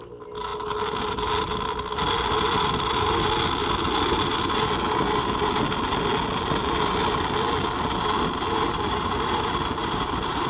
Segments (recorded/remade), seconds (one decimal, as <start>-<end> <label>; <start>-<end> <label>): 0.0-9.8 recorded; 9.8-10.5 remade

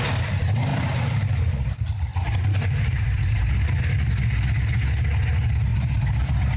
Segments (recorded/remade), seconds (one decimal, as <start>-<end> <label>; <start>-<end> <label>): 0.0-0.7 recorded; 0.7-1.5 remade; 1.5-2.1 recorded; 2.1-4.1 remade; 4.1-5.7 recorded; 5.7-6.6 remade

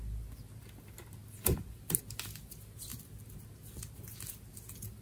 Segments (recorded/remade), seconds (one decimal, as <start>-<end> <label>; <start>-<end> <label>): 0.0-5.0 recorded

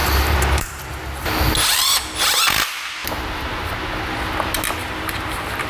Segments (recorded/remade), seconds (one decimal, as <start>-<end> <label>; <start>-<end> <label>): 0.0-0.8 remade; 0.8-3.0 recorded; 3.0-3.7 remade; 3.7-4.8 recorded; 4.8-5.7 remade

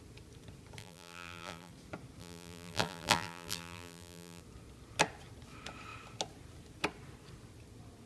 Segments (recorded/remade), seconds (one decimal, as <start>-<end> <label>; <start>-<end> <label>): 0.0-0.8 recorded; 0.8-1.7 remade; 1.7-2.2 recorded; 2.2-4.4 remade; 4.4-8.1 recorded

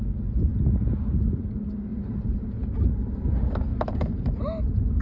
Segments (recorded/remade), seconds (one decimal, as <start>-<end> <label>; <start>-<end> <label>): 0.0-1.9 recorded; 1.9-2.5 remade; 2.5-3.7 recorded; 3.7-4.6 remade; 4.6-5.0 recorded

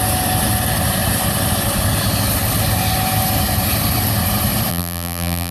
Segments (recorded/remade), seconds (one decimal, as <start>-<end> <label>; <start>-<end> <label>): 0.0-4.7 recorded; 4.7-5.5 remade

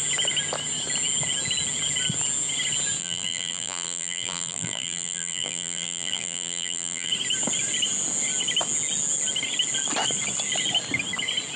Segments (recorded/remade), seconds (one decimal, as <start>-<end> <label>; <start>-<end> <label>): 0.0-3.0 recorded; 3.0-7.1 remade; 7.1-11.6 recorded